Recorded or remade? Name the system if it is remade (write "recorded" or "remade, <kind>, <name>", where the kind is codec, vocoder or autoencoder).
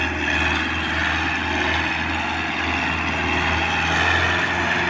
recorded